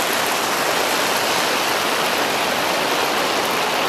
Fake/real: real